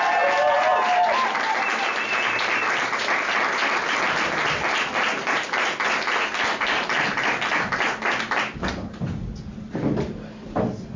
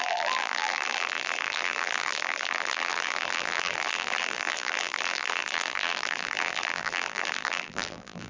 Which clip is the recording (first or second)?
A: first